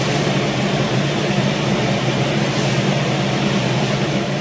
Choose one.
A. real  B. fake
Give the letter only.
A